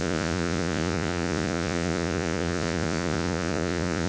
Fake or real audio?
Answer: fake